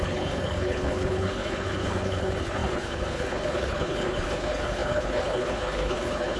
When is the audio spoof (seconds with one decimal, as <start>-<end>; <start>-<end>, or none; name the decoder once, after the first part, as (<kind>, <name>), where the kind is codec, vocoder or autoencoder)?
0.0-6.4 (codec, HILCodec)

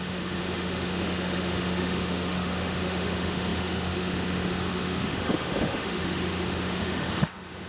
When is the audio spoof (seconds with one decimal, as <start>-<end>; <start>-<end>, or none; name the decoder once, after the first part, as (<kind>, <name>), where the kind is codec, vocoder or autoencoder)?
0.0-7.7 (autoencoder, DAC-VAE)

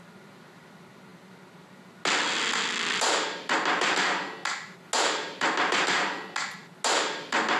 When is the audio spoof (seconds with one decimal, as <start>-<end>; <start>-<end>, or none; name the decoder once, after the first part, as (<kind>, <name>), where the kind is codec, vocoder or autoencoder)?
none

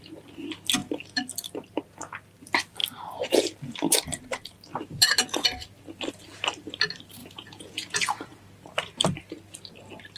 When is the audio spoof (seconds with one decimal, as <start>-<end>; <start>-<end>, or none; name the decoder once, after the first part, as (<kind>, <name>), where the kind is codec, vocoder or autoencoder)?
7.2-8.4 (vocoder, Vocos)